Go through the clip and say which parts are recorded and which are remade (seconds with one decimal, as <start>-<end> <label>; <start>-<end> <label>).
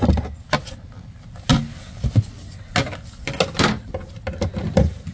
0.0-5.1 recorded